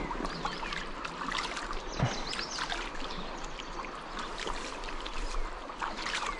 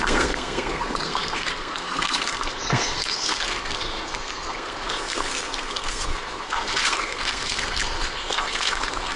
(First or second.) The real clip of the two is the first